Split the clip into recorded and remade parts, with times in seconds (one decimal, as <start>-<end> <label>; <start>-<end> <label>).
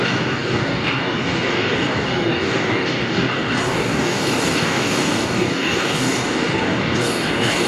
0.0-7.7 remade